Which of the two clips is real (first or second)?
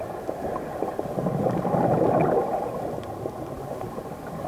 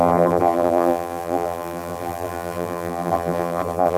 first